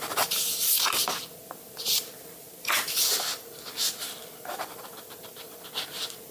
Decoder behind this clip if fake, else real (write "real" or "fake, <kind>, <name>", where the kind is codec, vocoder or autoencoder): fake, vocoder, BigVGAN v2